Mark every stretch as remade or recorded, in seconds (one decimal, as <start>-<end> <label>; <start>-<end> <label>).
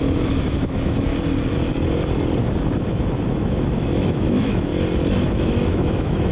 0.0-1.1 remade; 1.1-3.3 recorded; 3.3-4.7 remade; 4.7-5.3 recorded; 5.3-6.3 remade